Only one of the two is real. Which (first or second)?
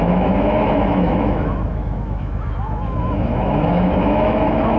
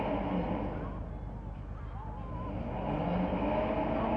second